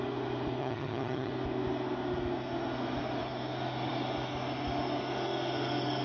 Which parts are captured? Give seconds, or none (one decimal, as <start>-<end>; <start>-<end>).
0.0-0.6; 1.3-6.0